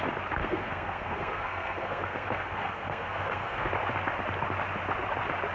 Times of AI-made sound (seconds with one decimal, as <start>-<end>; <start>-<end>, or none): 0.4-3.7